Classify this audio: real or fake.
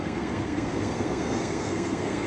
fake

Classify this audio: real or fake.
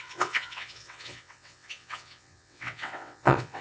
fake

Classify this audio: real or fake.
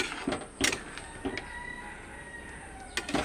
real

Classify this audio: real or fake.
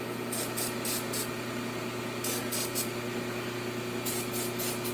real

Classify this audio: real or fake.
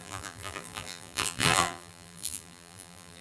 fake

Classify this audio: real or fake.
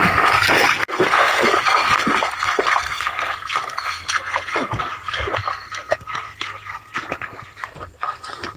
fake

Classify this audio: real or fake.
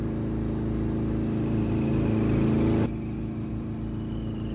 real